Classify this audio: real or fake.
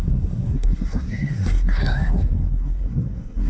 fake